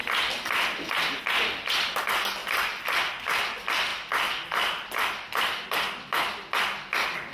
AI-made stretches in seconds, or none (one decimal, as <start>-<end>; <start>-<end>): 2.4-2.9